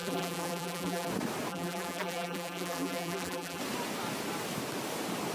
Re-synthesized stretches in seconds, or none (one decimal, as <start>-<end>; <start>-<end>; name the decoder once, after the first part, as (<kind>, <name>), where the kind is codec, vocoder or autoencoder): 0.0-1.1 (vocoder, BigVGAN v2); 1.5-3.6